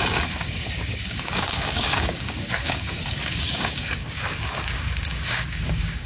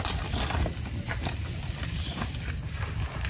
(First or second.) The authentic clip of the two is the second